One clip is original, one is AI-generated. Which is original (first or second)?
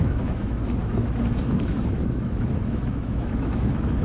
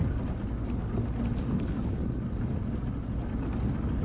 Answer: second